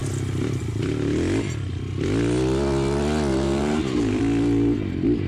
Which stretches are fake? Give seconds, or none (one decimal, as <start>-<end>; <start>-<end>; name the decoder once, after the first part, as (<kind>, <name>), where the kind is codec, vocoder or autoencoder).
3.3-4.2 (vocoder, BigVGAN v2)